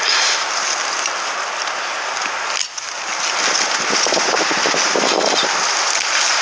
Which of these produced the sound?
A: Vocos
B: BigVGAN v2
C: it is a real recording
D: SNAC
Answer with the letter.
C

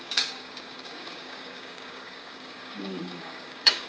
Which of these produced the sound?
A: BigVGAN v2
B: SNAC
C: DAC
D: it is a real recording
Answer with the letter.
C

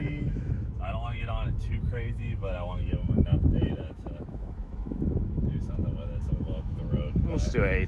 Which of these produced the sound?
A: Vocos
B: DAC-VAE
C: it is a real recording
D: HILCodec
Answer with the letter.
B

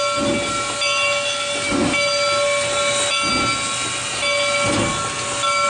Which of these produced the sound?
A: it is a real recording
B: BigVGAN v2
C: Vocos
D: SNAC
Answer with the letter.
A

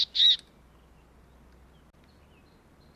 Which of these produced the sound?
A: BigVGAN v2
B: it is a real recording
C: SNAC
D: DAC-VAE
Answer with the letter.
B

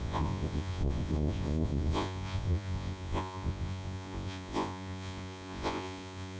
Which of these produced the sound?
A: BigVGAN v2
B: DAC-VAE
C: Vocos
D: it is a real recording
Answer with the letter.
C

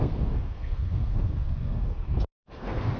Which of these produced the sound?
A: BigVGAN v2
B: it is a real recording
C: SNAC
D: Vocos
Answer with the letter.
C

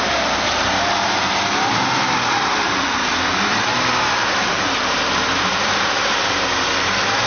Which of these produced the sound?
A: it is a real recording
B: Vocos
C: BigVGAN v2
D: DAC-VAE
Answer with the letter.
C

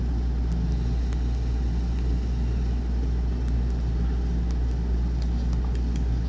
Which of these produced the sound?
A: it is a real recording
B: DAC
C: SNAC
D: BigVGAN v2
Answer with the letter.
A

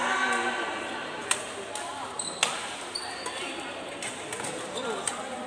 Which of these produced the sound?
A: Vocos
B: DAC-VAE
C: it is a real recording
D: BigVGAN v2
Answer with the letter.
C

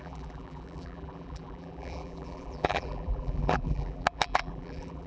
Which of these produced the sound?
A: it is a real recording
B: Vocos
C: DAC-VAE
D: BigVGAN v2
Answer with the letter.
D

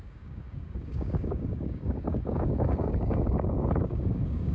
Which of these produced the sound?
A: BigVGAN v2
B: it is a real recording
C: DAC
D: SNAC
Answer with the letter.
C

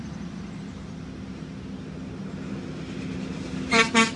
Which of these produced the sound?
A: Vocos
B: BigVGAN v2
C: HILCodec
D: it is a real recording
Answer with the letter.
D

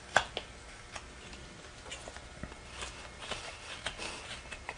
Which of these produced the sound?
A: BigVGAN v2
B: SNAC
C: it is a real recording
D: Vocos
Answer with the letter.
C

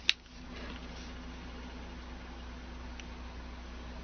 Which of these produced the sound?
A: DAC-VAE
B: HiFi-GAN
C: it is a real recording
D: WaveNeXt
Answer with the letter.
C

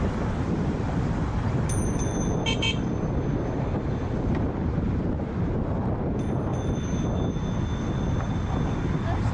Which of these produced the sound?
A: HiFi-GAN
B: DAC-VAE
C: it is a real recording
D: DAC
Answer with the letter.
C